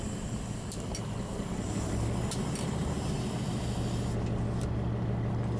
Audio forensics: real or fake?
real